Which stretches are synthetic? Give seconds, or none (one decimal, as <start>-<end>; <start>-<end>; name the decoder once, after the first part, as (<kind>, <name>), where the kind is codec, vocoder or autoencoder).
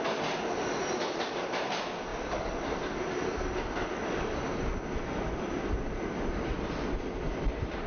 none